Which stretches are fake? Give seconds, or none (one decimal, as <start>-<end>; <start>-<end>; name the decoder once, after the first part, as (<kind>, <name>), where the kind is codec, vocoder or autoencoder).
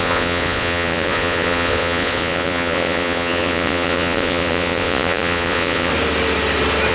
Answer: 0.0-5.9 (vocoder, Vocos)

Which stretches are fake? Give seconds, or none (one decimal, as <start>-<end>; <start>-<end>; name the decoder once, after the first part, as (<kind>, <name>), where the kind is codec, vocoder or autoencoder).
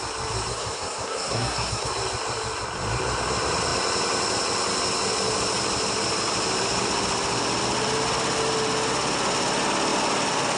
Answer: 0.5-1.9 (codec, SNAC)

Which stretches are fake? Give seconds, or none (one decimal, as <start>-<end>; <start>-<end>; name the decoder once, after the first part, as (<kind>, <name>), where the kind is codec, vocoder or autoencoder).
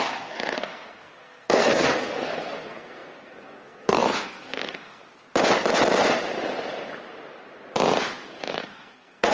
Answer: 0.0-5.0 (codec, SNAC); 8.5-9.3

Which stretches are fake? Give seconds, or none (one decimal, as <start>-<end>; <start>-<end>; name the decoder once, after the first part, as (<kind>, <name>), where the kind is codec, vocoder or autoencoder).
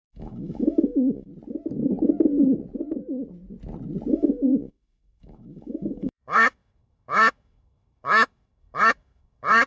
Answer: 0.0-1.3 (autoencoder, DAC-VAE); 4.1-9.7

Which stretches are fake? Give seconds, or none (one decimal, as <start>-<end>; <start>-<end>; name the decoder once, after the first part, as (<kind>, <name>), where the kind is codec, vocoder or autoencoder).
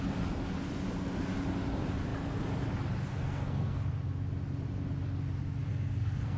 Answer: 3.1-3.9 (codec, SNAC); 5.7-6.4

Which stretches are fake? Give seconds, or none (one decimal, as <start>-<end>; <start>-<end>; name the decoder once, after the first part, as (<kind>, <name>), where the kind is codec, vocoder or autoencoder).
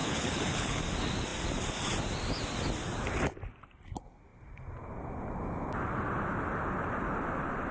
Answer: 0.0-0.8 (codec, HILCodec)